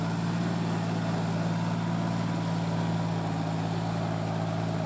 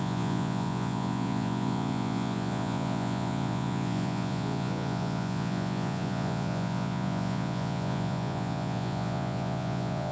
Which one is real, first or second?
first